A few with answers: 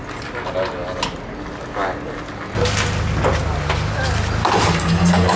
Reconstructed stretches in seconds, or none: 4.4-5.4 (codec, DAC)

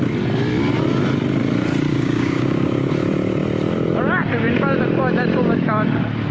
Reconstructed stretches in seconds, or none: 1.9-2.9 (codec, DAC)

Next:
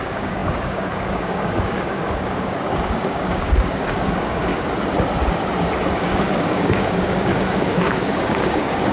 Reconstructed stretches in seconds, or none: 0.0-4.5 (codec, DAC); 5.9-8.9